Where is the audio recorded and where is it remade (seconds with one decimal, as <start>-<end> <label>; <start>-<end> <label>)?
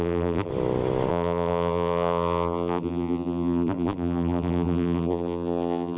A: 0.0-0.5 remade; 0.5-1.1 recorded; 1.1-6.0 remade